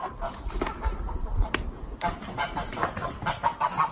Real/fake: real